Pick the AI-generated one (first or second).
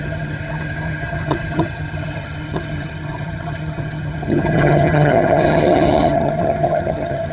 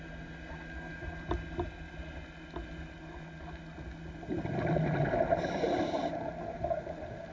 first